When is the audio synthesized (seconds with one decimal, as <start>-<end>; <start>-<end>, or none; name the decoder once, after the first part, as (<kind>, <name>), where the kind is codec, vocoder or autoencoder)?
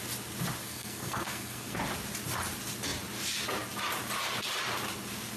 0.6-1.8 (codec, SNAC)